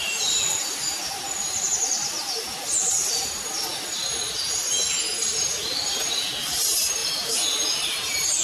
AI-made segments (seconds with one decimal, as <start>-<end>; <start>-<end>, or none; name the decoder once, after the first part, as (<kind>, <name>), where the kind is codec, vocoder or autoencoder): none